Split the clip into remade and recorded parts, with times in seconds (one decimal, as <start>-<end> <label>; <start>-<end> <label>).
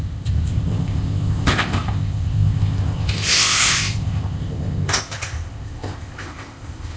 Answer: 0.0-7.0 remade